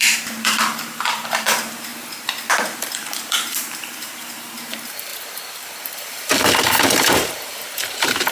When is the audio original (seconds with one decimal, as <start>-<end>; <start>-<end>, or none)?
1.9-2.8